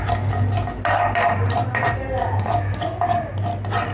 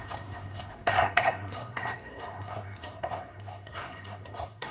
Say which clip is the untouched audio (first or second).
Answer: first